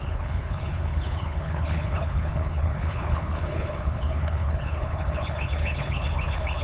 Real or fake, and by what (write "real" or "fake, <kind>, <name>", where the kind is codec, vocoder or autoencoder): fake, codec, HILCodec